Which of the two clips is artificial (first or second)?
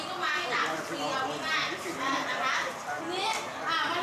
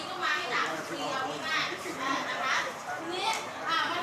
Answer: second